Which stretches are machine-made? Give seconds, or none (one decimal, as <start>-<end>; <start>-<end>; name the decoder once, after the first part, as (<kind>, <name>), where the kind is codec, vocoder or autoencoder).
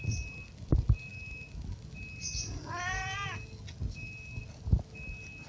none